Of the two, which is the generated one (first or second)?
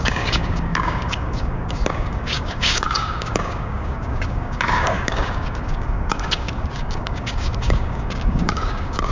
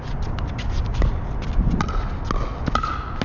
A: first